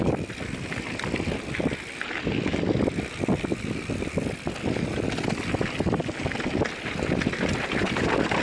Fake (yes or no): no